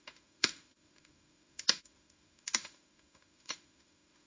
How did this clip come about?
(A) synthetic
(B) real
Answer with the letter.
A